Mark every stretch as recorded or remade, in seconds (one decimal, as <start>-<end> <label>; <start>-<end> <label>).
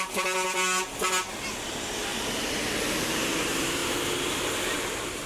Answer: 0.0-0.9 remade; 0.9-1.7 recorded; 1.7-3.8 remade; 3.8-4.3 recorded; 4.3-5.3 remade